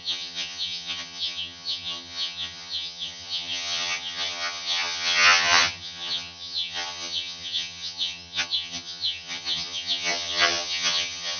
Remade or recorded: remade